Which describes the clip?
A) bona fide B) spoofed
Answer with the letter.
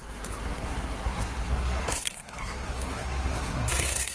B